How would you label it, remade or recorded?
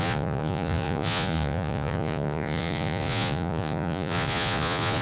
remade